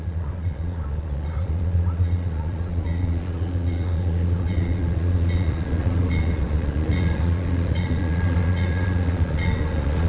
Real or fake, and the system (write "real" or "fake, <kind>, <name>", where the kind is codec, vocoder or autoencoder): fake, vocoder, Vocos